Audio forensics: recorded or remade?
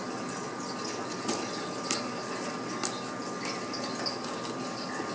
recorded